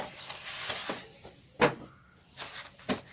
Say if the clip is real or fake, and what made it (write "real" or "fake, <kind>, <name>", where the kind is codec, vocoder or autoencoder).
fake, vocoder, BigVGAN v2